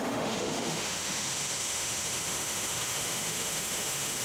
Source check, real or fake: fake